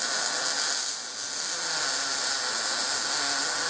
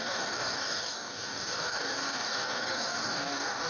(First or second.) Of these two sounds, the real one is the first